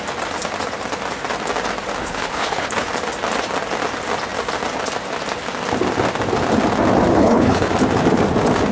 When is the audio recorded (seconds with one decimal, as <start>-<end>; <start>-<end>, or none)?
0.0-2.0; 2.9-7.1; 7.7-8.7